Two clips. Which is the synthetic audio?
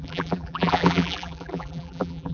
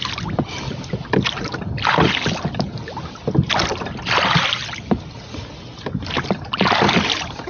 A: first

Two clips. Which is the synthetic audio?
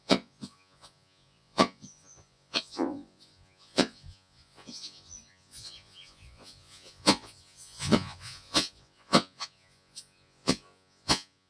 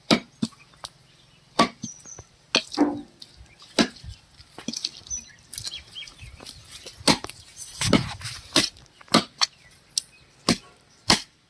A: first